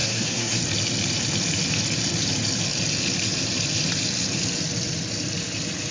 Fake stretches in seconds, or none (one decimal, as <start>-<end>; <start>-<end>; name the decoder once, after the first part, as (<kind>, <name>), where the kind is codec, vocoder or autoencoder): 0.0-0.6 (codec, SNAC)